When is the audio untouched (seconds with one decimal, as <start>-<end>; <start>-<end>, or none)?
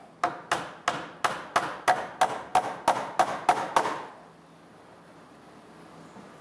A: 0.0-6.4